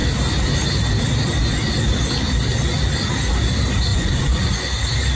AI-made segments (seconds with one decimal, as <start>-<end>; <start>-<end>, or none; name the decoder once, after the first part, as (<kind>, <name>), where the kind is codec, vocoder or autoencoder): 3.9-4.6 (vocoder, Vocos)